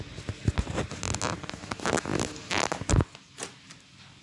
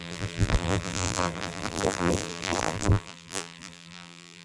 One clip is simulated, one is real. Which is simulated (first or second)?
second